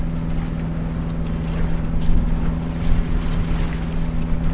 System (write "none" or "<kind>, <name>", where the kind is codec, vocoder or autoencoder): none